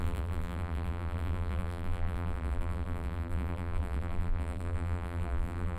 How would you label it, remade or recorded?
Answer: remade